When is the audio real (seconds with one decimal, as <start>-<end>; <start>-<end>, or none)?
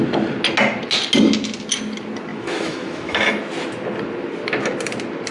0.0-2.3; 3.4-5.3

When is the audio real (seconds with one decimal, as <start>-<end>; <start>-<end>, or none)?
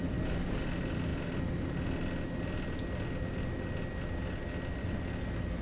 0.0-5.6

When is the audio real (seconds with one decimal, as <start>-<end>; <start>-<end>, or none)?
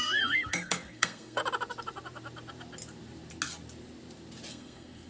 1.4-4.5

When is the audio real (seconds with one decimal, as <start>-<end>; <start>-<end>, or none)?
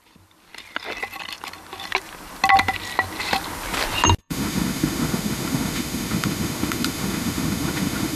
0.0-4.2